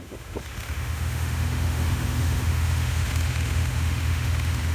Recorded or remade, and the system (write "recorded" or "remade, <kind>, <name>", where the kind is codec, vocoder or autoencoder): remade, autoencoder, DAC-VAE